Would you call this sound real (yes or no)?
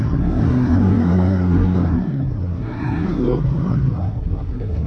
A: no